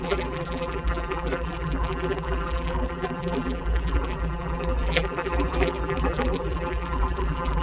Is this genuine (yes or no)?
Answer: no